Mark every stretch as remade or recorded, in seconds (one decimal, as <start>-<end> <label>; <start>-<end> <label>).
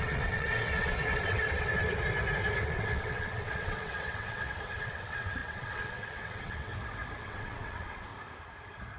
0.0-1.9 remade; 1.9-2.6 recorded; 2.6-6.7 remade; 6.7-7.2 recorded; 7.2-8.1 remade; 8.1-9.0 recorded